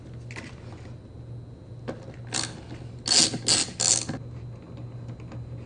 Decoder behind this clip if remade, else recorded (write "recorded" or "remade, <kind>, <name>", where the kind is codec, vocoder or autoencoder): recorded